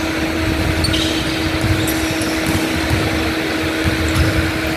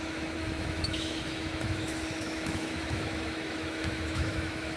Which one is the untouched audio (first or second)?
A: first